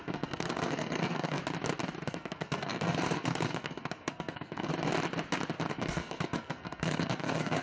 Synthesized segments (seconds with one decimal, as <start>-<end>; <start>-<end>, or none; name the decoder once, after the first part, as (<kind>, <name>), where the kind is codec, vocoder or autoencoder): 0.0-1.4 (codec, SNAC); 2.1-4.7; 5.7-7.6